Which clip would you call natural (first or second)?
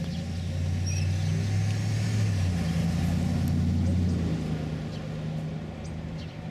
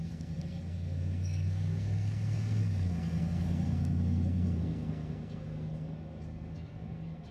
first